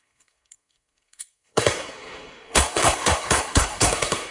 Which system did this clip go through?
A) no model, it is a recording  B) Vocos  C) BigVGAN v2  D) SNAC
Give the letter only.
D